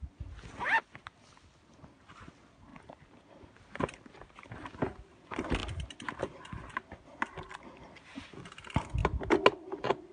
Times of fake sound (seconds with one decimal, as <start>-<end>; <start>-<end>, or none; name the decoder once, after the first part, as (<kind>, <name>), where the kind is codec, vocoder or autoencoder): none